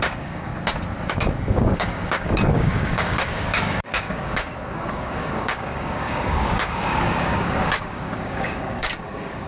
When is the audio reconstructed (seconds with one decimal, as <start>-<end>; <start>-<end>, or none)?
0.0-0.5; 1.1-9.5